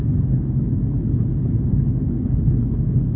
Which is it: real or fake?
fake